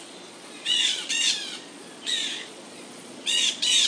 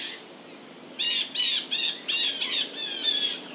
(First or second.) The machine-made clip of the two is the first